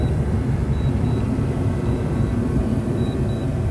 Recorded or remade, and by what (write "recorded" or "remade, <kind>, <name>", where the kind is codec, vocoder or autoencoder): remade, vocoder, BigVGAN v2